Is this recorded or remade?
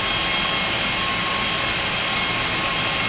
recorded